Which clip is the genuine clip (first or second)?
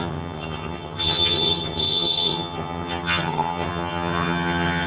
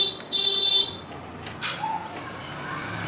second